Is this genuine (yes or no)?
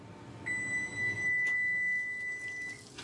yes